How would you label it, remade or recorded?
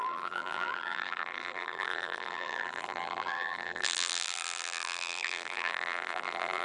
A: remade